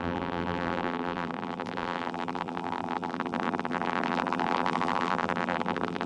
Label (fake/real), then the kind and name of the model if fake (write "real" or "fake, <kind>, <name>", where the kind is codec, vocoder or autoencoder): fake, vocoder, BigVGAN v2